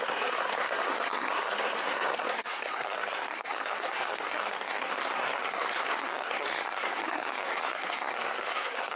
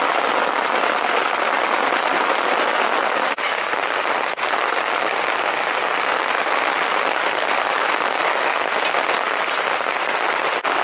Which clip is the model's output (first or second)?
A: first